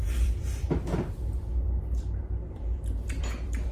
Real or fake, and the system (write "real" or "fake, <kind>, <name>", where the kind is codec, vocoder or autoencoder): fake, vocoder, BigVGAN v2